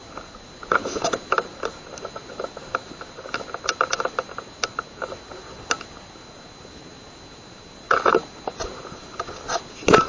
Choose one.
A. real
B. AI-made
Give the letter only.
A